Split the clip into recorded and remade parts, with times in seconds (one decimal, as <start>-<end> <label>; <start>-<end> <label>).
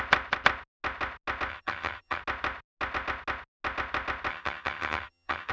0.0-1.5 recorded; 1.5-2.2 remade; 2.2-4.3 recorded; 4.3-5.5 remade